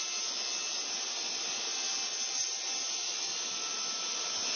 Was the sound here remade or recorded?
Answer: recorded